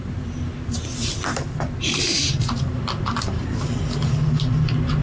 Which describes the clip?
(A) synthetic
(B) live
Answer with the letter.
B